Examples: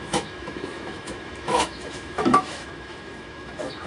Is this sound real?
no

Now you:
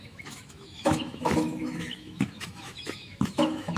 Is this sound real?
no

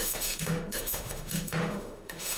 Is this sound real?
no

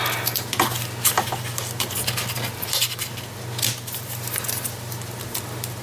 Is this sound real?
yes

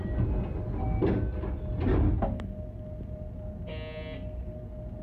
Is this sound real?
yes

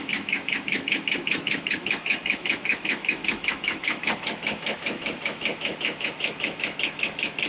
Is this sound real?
no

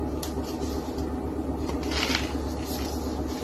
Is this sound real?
yes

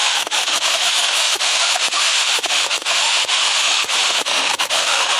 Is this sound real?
no